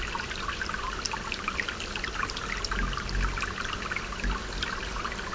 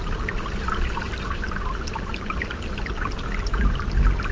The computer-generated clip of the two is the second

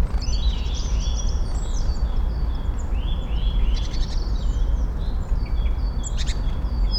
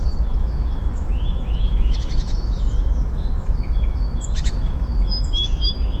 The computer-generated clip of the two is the second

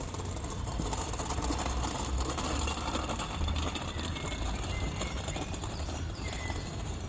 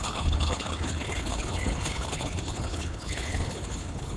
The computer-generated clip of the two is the second